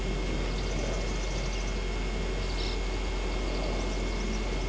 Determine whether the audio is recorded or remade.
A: recorded